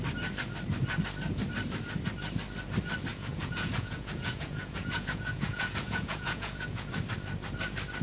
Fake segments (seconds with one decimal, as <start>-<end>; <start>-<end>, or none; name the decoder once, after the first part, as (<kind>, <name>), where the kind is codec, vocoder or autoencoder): 3.1-6.9 (vocoder, Vocos)